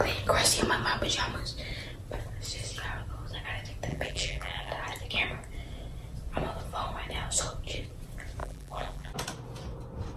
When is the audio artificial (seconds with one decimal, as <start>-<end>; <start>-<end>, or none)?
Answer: 3.9-4.7; 8.4-9.1